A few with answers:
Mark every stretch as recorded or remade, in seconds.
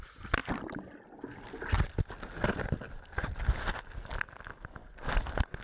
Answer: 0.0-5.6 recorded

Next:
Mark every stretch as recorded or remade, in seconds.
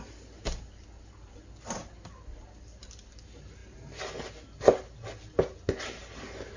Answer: 0.0-6.6 recorded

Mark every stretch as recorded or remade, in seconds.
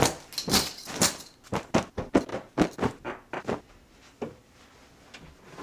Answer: 0.0-5.6 recorded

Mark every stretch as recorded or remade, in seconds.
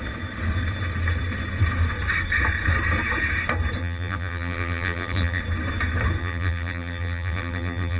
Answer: 0.0-3.8 recorded; 3.8-5.4 remade; 5.4-6.2 recorded; 6.2-8.0 remade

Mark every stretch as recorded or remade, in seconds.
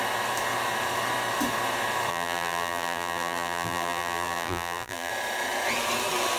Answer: 0.0-2.1 recorded; 2.1-5.1 remade; 5.1-6.4 recorded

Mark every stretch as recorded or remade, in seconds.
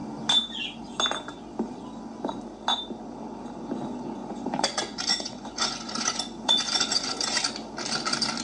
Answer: 0.0-4.2 recorded; 4.2-7.4 remade; 7.4-8.4 recorded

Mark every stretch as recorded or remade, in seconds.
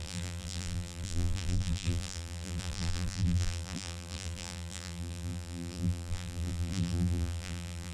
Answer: 0.0-7.9 remade